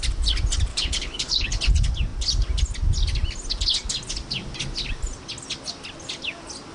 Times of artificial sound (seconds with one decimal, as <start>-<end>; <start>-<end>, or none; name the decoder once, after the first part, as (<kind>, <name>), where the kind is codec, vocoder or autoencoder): 0.7-1.6 (codec, HILCodec)